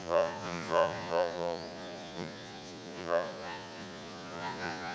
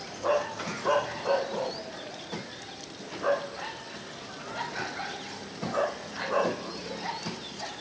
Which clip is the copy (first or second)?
first